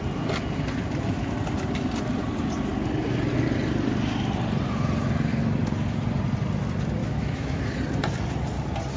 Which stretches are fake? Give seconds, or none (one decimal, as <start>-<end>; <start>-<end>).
7.0-7.6